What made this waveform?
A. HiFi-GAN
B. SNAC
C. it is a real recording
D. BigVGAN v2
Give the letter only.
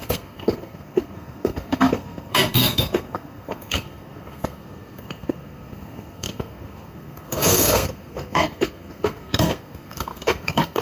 B